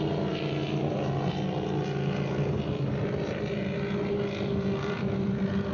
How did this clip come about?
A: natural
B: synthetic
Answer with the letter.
A